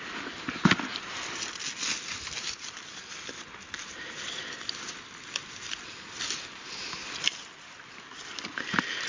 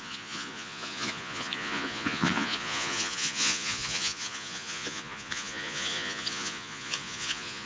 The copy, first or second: second